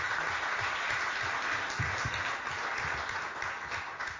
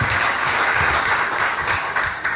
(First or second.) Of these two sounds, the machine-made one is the second